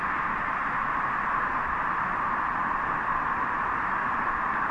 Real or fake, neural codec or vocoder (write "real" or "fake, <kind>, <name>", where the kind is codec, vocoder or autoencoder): real